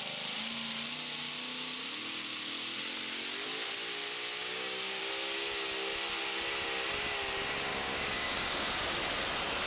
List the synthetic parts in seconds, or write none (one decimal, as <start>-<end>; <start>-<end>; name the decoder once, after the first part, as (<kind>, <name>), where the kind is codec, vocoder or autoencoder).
4.4-5.0 (codec, DAC); 7.7-8.5